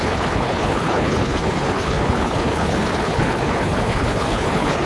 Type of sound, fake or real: fake